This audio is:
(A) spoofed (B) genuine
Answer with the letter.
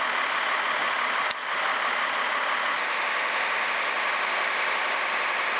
B